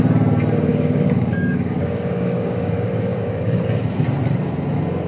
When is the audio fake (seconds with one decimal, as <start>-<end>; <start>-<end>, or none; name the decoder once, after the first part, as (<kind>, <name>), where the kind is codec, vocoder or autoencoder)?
0.7-3.8 (codec, DAC)